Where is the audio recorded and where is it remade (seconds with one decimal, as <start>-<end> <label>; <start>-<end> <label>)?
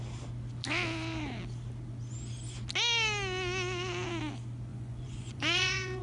0.0-4.7 recorded; 4.7-6.0 remade